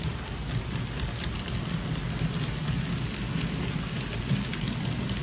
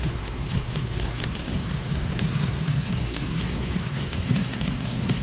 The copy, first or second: second